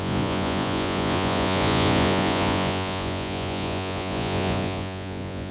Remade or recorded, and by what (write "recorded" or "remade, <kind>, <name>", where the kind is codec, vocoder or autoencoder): remade, vocoder, Vocos